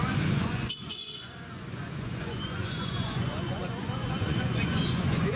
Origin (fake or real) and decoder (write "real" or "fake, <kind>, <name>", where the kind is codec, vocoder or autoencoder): fake, vocoder, Vocos